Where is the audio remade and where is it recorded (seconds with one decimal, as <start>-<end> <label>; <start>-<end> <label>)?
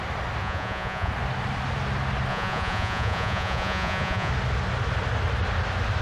0.0-0.4 recorded; 0.4-1.1 remade; 1.1-2.3 recorded; 2.3-4.3 remade; 4.3-6.0 recorded